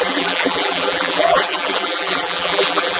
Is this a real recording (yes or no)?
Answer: no